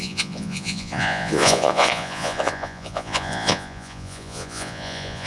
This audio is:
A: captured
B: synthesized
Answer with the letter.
B